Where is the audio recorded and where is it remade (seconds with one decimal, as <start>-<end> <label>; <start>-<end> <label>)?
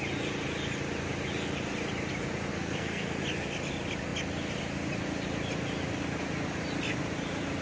0.0-2.5 recorded; 2.5-3.2 remade; 3.2-7.6 recorded